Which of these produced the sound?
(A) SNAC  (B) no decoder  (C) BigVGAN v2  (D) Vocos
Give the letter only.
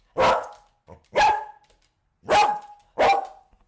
B